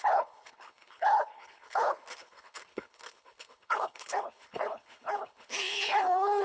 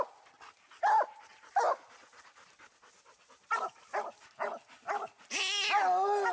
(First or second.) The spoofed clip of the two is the first